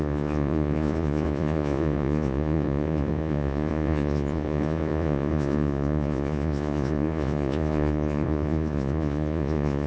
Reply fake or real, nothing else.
fake